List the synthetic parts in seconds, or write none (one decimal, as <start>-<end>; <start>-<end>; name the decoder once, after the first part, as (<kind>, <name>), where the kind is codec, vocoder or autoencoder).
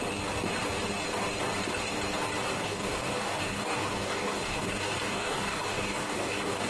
2.5-6.7 (codec, DAC)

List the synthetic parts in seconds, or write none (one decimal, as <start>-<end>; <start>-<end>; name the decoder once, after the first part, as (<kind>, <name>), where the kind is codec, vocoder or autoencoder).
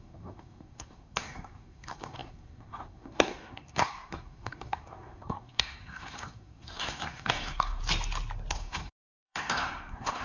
0.0-7.8 (codec, SNAC); 8.5-10.2